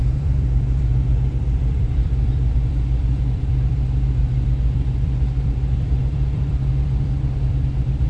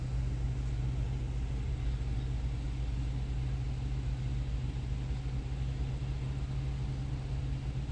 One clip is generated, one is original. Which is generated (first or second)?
first